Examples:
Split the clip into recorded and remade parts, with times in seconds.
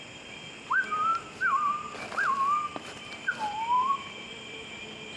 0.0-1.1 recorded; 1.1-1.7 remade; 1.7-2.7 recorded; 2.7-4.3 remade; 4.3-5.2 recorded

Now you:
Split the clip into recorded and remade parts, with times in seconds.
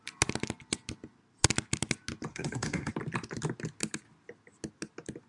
0.0-2.3 recorded; 2.3-2.9 remade; 2.9-5.3 recorded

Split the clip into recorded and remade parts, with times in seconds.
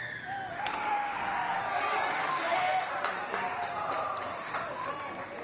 0.0-0.5 recorded; 0.5-1.6 remade; 1.6-2.1 recorded; 2.1-2.9 remade; 2.9-4.3 recorded; 4.3-4.9 remade; 4.9-5.4 recorded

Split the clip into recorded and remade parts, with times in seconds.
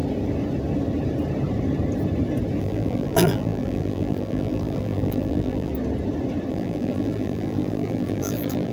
0.0-2.6 recorded; 2.6-5.7 remade; 5.7-6.5 recorded; 6.5-8.7 remade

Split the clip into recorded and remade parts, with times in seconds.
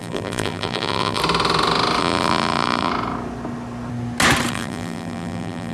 0.0-1.2 remade; 1.2-2.0 recorded; 2.0-2.9 remade; 2.9-4.5 recorded; 4.5-5.7 remade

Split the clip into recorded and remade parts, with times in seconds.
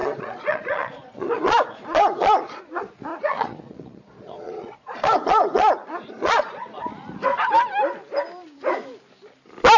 0.0-2.7 remade; 2.7-3.1 recorded; 3.1-6.8 remade; 6.8-9.8 recorded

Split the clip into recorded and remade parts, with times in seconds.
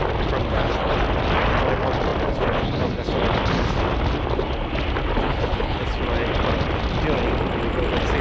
0.0-0.5 recorded; 0.5-1.0 remade; 1.0-5.2 recorded; 5.2-5.8 remade; 5.8-8.2 recorded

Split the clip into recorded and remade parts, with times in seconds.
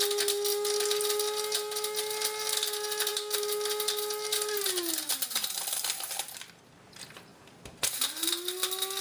0.0-7.3 recorded; 7.3-8.3 remade; 8.3-9.0 recorded